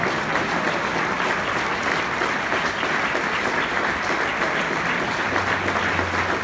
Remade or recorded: recorded